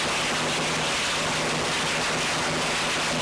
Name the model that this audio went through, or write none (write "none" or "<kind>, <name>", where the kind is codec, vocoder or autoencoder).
none